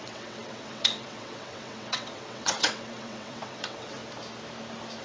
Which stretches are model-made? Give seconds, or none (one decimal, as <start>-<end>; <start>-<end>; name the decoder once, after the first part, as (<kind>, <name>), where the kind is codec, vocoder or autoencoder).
0.0-4.0 (vocoder, WaveNeXt)